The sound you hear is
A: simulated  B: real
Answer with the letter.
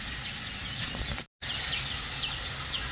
B